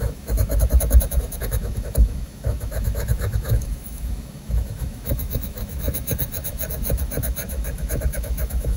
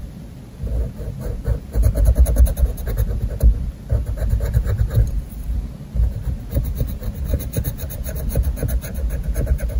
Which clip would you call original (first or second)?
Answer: second